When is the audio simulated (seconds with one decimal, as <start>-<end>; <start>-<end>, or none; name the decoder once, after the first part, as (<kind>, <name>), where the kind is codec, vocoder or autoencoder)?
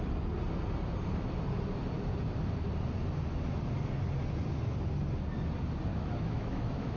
5.9-7.0 (autoencoder, DAC-VAE)